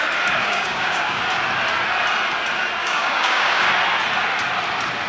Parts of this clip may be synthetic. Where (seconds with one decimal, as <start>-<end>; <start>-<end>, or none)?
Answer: 0.4-1.2; 2.8-3.7